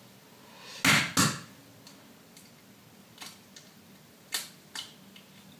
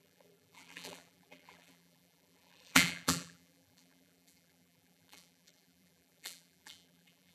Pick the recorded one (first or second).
first